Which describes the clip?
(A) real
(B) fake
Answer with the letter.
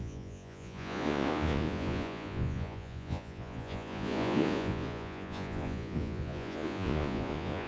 B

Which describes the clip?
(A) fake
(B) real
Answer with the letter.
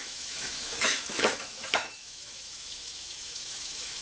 A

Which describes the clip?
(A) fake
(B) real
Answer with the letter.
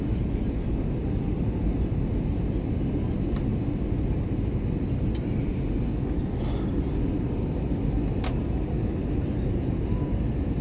B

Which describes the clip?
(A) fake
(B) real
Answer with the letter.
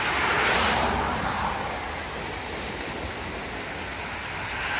B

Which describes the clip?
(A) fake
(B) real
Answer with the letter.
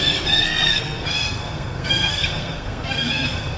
A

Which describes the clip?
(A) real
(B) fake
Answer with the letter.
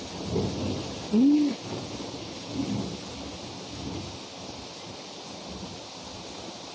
A